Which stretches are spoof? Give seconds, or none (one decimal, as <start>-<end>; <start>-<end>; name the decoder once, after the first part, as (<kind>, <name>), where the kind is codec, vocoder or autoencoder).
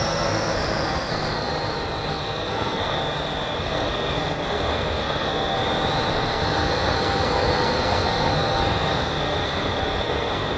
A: 0.0-1.5 (codec, SNAC); 2.1-3.0; 3.6-5.6; 6.1-10.6